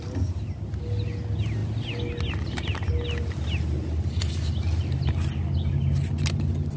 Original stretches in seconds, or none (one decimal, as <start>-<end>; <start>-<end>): 0.0-6.8